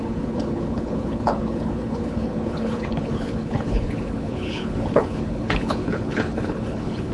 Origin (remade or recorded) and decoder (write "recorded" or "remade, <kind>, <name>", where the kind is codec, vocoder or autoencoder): remade, codec, HILCodec